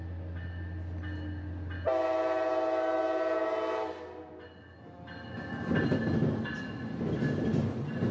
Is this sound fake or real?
real